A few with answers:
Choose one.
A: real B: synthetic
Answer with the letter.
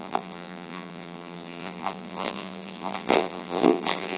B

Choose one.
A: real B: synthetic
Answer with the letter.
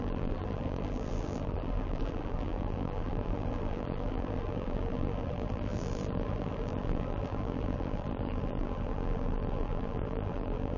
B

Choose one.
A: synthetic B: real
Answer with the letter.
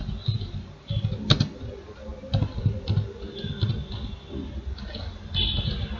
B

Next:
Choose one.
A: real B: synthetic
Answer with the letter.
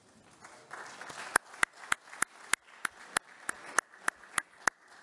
A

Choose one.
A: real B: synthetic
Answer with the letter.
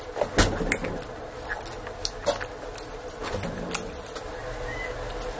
A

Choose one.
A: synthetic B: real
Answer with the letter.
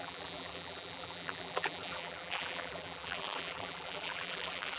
A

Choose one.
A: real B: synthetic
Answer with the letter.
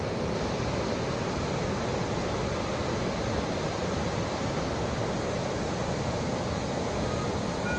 A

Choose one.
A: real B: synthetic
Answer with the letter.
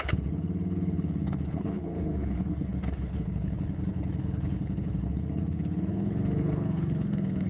B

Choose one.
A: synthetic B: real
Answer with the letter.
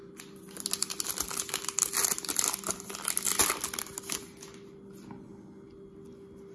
B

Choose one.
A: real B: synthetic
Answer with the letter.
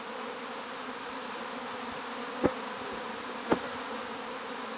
A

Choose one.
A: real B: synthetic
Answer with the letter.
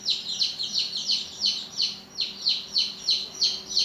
A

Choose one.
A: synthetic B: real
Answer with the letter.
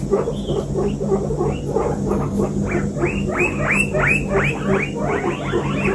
B